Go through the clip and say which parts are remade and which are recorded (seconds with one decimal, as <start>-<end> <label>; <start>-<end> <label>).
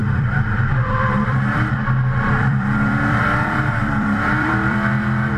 0.0-5.4 remade